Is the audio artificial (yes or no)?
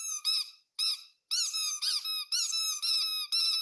no